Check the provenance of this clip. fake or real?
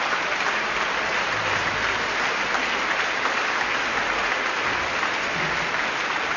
real